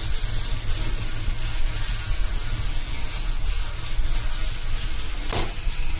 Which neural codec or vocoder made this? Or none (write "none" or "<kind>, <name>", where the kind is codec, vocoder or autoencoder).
none